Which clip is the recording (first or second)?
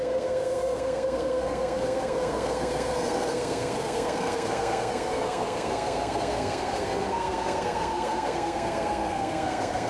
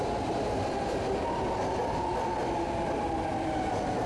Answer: second